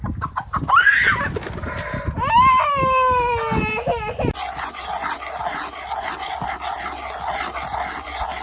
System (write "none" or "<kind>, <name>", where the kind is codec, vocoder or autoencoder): none